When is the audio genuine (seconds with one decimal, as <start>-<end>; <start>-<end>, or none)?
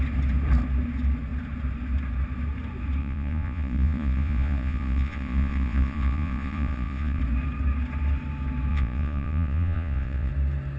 0.0-3.0; 7.2-8.7; 10.3-10.8